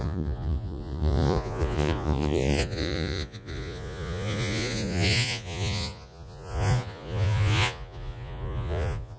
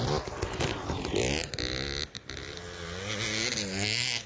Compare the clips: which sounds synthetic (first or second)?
first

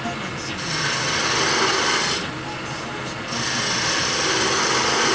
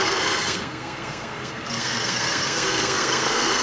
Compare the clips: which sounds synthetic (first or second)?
second